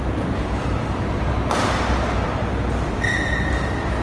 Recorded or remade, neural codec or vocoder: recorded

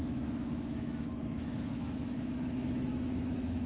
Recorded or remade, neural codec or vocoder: remade, autoencoder, DAC-VAE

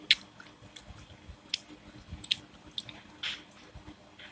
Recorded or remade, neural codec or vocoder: recorded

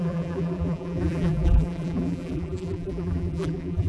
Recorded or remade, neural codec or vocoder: remade, vocoder, BigVGAN v2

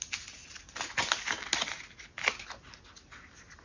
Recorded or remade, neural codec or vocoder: recorded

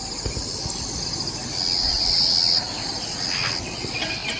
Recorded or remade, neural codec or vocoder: recorded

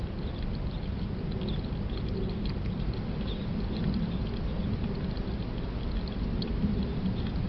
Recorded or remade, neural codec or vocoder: recorded